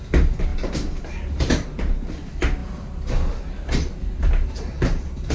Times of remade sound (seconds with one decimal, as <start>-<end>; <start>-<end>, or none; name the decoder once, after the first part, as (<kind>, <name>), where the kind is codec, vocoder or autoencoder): none